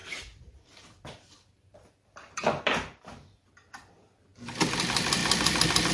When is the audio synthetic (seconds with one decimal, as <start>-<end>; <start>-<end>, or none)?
0.0-3.5